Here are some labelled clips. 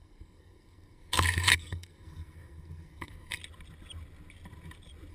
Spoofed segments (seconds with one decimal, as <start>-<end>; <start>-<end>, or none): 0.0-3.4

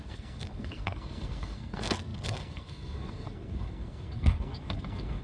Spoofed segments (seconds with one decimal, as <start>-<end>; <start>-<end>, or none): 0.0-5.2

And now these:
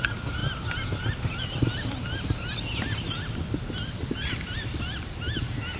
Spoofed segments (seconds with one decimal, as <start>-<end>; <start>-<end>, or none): none

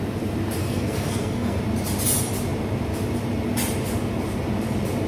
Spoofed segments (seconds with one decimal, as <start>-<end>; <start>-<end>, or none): 0.6-1.6

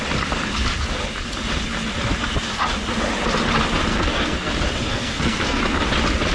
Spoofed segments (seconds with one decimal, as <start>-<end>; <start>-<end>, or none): 3.9-4.5; 4.9-5.6

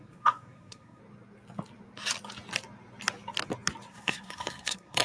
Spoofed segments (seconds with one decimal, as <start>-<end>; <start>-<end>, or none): 0.0-1.0; 3.9-5.0